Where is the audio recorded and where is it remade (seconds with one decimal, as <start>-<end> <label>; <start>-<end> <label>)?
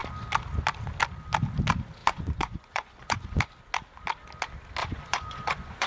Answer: 0.0-2.0 recorded; 2.0-3.4 remade; 3.4-4.8 recorded; 4.8-5.9 remade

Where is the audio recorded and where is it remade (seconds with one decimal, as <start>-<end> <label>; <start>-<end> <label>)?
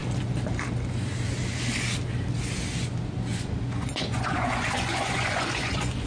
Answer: 0.0-3.3 recorded; 3.3-6.1 remade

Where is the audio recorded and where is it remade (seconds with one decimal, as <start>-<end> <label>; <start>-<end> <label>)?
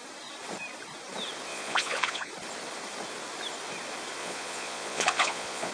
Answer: 0.0-1.5 recorded; 1.5-2.3 remade; 2.3-4.2 recorded; 4.2-5.7 remade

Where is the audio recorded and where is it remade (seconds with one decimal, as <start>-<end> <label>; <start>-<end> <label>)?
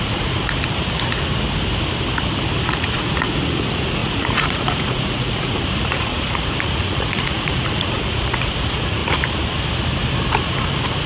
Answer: 0.0-0.4 remade; 0.4-2.6 recorded; 2.6-9.0 remade; 9.0-11.1 recorded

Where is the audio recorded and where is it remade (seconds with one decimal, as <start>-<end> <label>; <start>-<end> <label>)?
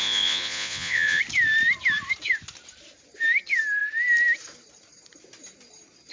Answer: 0.0-1.2 remade; 1.2-6.1 recorded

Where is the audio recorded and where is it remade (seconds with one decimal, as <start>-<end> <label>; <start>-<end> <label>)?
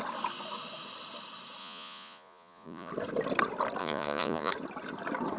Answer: 0.0-1.6 recorded; 1.6-2.9 remade; 2.9-3.8 recorded; 3.8-4.5 remade; 4.5-5.4 recorded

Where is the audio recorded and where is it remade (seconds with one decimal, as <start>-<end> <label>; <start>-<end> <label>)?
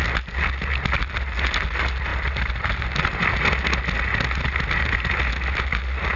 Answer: 0.0-6.2 recorded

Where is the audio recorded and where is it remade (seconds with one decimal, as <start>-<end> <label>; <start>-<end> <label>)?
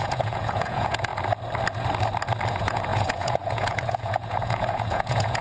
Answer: 0.0-1.1 remade; 1.1-2.5 recorded; 2.5-5.4 remade